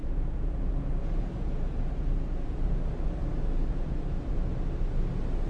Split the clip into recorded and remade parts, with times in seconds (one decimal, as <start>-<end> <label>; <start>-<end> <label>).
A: 0.0-2.8 remade; 2.8-5.5 recorded